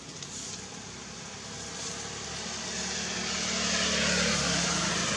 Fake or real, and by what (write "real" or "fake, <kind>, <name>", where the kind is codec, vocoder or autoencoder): real